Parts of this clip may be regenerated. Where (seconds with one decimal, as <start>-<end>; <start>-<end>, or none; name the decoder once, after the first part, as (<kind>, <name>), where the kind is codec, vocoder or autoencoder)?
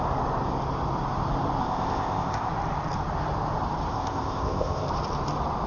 1.6-2.5 (codec, ZipCodec); 3.9-4.9